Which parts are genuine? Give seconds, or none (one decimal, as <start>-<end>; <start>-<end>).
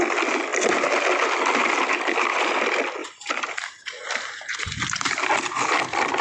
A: 0.0-3.0; 5.1-6.2